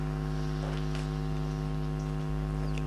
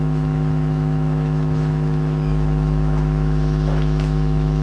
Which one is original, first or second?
first